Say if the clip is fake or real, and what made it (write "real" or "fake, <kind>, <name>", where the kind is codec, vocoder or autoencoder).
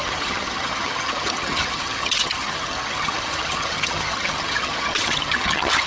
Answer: fake, vocoder, HiFi-GAN